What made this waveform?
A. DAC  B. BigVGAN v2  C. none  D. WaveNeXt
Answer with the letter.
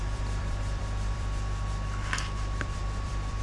B